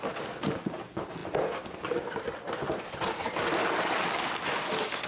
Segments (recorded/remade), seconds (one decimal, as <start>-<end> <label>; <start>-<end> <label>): 0.0-5.1 recorded